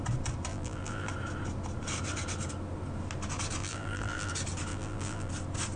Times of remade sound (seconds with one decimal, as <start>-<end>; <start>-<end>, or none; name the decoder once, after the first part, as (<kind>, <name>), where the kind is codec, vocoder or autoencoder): 0.5-1.1 (vocoder, BigVGAN v2); 3.6-4.3; 4.7-5.3